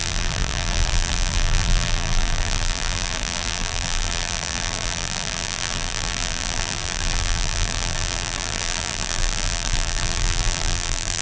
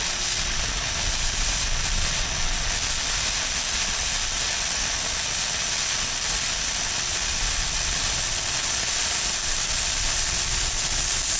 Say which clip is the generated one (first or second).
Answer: first